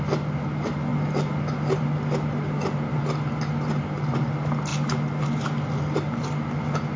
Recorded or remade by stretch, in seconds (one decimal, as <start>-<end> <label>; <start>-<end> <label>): 0.0-7.0 recorded